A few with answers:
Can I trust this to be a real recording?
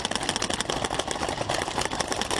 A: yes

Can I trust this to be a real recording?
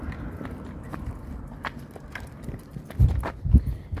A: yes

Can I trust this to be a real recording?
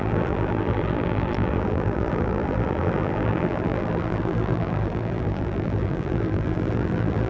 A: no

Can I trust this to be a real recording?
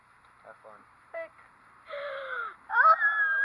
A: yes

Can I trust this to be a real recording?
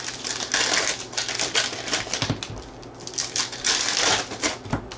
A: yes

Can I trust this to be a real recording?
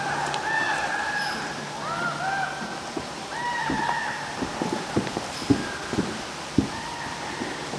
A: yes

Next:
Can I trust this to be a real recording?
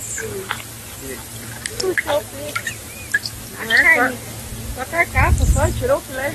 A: yes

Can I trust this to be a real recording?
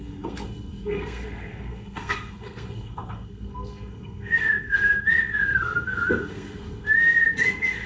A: no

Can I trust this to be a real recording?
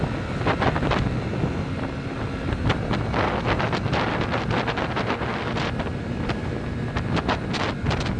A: yes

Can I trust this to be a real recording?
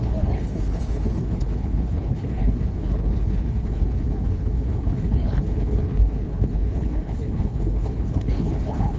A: no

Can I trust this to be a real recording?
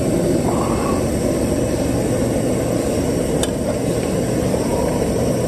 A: yes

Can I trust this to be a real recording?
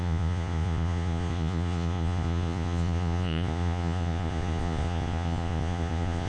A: no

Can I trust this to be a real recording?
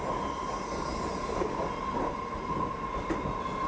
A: yes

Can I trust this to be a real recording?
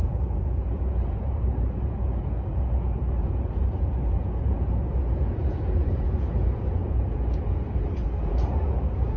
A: no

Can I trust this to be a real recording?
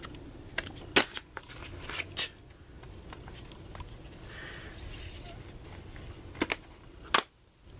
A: yes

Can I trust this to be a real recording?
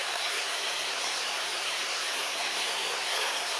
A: no